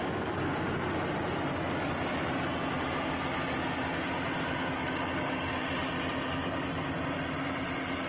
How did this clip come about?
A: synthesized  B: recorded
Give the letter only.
B